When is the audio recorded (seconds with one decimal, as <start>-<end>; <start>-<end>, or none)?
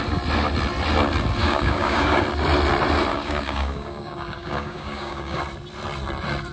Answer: 0.0-1.4; 2.2-3.1; 5.4-6.5